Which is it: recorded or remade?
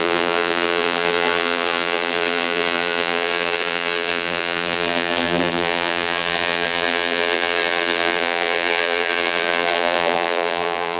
remade